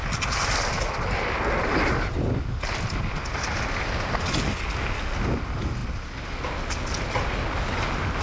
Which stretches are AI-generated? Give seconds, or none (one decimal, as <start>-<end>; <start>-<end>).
none